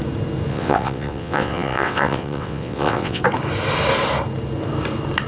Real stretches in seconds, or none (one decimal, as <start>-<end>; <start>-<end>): 0.0-0.5; 3.2-5.3